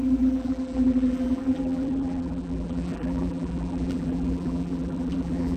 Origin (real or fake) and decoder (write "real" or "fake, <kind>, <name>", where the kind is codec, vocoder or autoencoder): fake, vocoder, BigVGAN v2